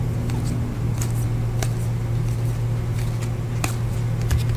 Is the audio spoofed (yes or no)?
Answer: no